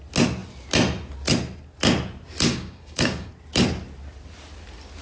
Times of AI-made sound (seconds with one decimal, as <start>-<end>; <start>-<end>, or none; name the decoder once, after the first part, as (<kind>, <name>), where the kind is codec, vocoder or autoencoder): 2.5-3.3 (codec, DAC)

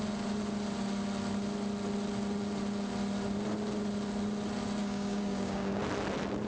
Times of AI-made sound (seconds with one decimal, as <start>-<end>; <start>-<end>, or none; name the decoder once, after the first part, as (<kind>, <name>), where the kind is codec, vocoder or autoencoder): 4.8-5.8 (codec, DAC)

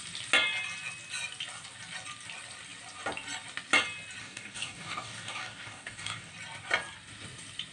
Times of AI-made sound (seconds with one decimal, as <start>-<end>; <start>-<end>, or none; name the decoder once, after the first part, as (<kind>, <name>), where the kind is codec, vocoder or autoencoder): 4.2-6.3 (codec, DAC)